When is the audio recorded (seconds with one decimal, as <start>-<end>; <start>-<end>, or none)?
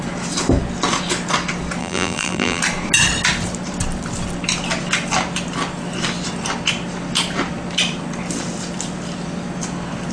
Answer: 0.0-1.8; 2.6-10.1